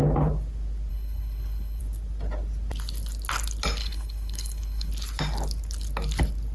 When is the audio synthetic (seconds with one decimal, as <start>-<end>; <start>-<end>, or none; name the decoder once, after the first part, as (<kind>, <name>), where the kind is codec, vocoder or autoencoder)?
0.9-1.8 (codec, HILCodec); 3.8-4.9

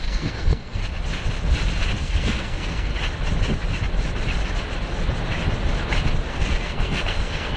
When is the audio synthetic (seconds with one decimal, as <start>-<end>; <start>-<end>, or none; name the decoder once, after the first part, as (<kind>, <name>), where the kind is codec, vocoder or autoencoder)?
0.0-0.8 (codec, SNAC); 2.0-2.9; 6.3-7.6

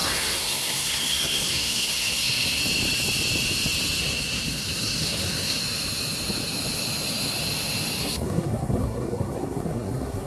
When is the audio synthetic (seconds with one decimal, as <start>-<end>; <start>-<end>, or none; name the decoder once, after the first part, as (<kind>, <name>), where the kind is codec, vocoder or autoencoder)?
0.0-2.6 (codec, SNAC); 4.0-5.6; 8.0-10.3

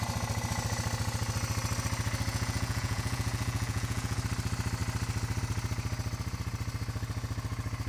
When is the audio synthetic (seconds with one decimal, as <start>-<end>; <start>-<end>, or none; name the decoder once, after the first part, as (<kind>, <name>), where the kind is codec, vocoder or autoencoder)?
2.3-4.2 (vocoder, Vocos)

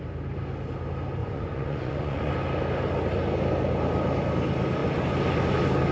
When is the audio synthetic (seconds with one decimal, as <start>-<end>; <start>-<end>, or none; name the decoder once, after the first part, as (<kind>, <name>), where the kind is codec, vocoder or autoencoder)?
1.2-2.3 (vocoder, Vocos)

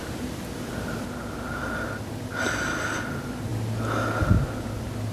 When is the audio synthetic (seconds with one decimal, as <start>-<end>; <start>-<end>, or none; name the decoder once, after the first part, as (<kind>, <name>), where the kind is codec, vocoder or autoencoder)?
none

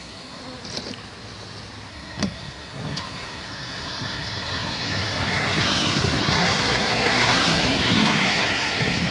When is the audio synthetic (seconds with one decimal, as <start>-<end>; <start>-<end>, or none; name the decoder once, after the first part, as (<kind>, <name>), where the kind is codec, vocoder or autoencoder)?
0.0-0.4 (codec, SNAC); 1.9-9.1